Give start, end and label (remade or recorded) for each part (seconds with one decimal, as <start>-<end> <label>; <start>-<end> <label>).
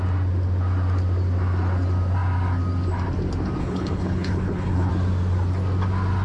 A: 0.0-3.6 recorded; 3.6-4.9 remade; 4.9-6.2 recorded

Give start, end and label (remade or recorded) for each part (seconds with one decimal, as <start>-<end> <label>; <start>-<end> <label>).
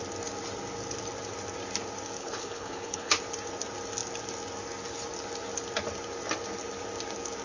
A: 0.0-2.2 recorded; 2.2-3.1 remade; 3.1-7.4 recorded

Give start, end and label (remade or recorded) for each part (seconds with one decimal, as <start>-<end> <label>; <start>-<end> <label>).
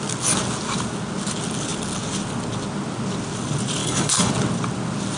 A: 0.0-3.8 recorded; 3.8-4.3 remade; 4.3-5.2 recorded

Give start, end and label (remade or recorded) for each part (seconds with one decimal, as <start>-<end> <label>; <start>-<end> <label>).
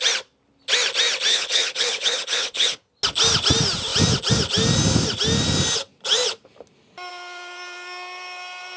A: 0.0-1.3 recorded; 1.3-2.9 remade; 2.9-8.8 recorded